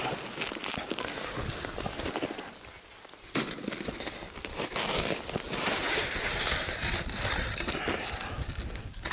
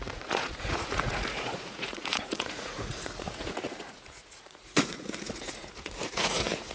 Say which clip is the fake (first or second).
second